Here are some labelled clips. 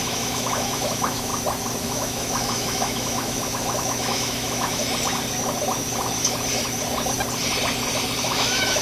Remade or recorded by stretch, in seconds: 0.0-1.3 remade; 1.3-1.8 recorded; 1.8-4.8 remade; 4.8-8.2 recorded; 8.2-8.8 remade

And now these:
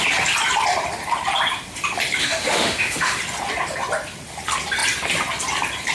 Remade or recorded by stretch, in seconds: 0.0-2.2 recorded; 2.2-3.2 remade; 3.2-5.9 recorded

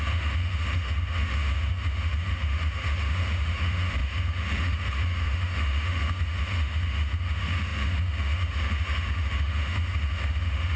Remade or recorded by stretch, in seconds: 0.0-10.8 remade

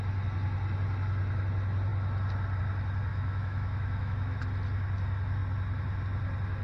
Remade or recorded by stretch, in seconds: 0.0-3.1 recorded; 3.1-4.4 remade; 4.4-6.6 recorded